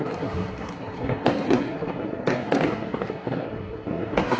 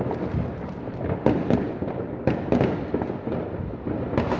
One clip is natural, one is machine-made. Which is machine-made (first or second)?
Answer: first